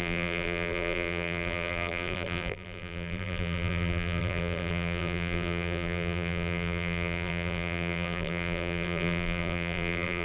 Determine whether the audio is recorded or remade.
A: remade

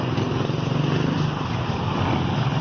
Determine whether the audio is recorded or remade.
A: remade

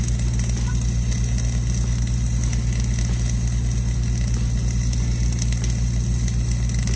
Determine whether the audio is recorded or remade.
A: recorded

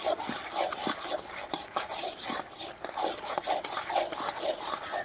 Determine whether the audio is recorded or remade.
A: recorded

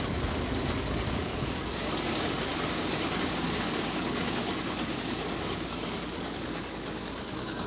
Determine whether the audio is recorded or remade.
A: remade